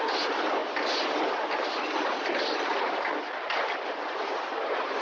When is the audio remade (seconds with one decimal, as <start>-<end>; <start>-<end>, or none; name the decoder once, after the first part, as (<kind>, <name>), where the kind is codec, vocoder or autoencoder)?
none